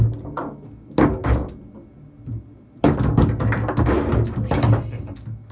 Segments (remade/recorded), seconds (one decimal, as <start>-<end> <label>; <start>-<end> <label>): 0.0-5.5 recorded